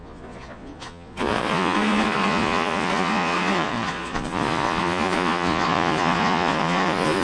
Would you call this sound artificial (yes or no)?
yes